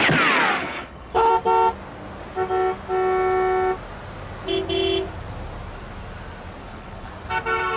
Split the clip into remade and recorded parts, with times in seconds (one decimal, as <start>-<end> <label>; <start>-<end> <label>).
0.0-0.6 recorded; 0.6-1.3 remade; 1.3-6.6 recorded; 6.6-7.1 remade; 7.1-7.8 recorded